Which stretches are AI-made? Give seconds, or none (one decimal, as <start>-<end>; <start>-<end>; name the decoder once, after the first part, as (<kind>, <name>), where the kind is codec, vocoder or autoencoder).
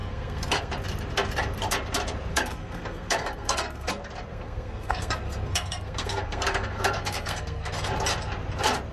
0.0-0.7 (codec, SNAC); 2.3-3.9; 4.3-7.9